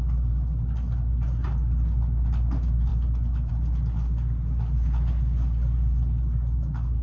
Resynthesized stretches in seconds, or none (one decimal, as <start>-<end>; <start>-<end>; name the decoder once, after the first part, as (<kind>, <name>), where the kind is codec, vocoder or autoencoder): none